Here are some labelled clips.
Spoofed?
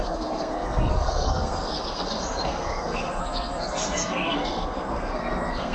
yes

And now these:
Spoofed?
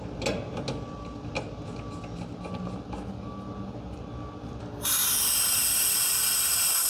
no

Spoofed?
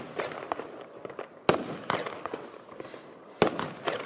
no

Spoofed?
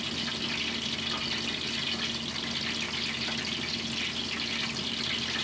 no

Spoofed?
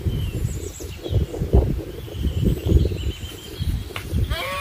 yes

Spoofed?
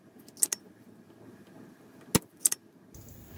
no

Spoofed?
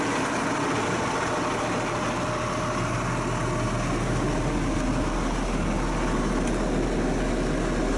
no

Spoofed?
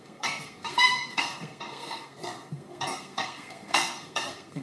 yes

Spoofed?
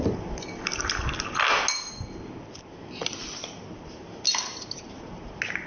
no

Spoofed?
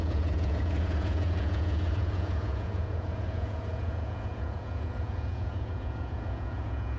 yes